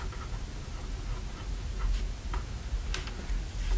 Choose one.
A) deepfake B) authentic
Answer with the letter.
B